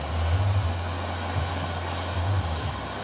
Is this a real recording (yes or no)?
yes